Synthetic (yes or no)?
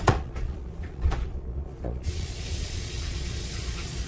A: yes